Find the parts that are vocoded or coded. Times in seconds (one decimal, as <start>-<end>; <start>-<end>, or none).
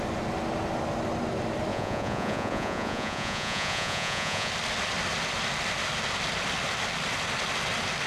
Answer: 1.7-4.5